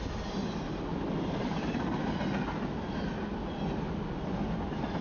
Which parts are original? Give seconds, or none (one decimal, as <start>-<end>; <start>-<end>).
0.0-5.0